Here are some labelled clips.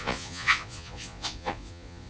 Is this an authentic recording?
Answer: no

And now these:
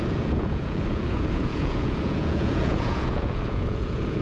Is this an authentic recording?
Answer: no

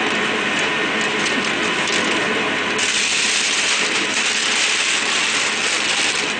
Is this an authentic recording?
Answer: yes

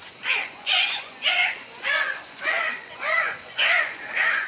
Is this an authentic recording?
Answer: no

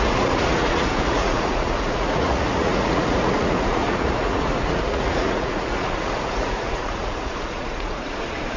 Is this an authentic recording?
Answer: no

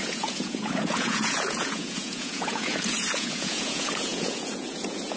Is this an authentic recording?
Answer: no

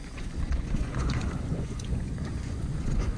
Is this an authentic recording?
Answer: no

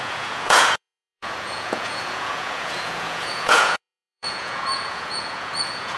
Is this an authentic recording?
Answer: no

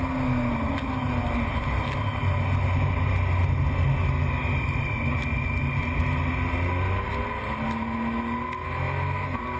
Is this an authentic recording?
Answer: yes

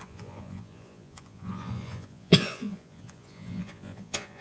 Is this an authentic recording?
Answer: no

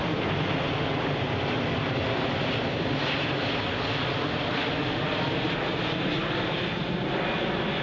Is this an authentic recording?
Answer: yes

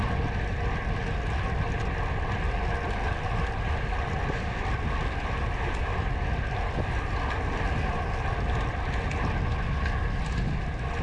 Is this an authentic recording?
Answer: yes